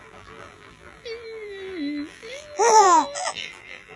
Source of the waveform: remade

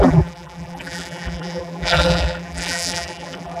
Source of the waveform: remade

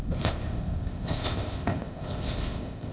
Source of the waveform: remade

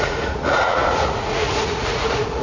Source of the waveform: remade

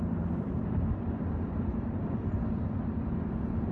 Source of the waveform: remade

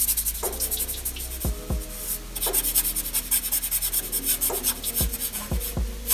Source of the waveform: recorded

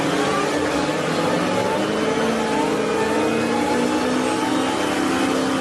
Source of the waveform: recorded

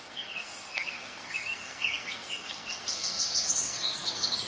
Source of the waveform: remade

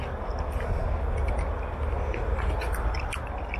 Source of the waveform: recorded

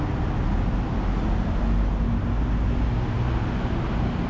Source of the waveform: recorded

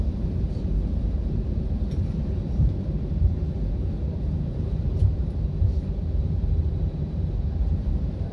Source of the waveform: remade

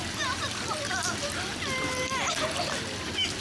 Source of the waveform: recorded